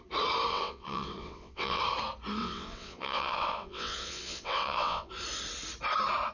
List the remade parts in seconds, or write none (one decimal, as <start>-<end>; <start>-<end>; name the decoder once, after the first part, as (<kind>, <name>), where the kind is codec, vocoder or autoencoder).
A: 0.5-1.8 (vocoder, WaveNeXt); 2.4-5.1